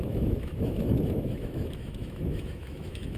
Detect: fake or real fake